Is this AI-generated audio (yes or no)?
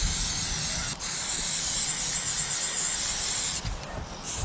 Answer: no